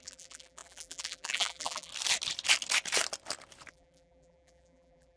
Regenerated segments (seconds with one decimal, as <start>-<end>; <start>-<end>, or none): 0.0-1.9; 3.7-5.2